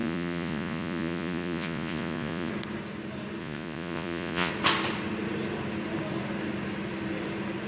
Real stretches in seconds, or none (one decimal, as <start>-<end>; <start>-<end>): 2.5-3.4; 4.5-7.7